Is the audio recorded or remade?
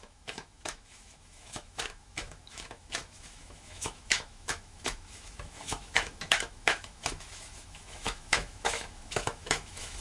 remade